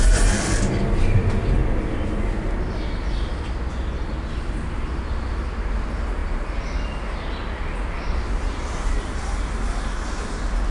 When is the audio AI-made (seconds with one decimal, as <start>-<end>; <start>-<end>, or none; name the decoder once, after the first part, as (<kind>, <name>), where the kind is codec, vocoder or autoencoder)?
none